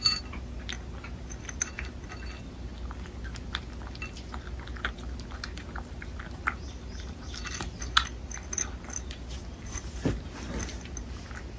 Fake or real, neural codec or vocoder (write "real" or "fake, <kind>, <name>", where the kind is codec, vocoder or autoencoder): real